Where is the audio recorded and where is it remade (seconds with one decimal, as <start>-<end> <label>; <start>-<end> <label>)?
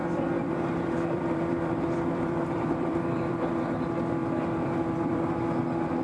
0.0-3.6 remade; 3.6-4.2 recorded; 4.2-5.3 remade; 5.3-6.0 recorded